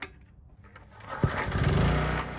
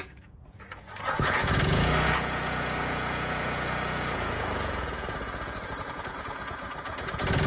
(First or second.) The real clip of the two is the first